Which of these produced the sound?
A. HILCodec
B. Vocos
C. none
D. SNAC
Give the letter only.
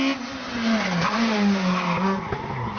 C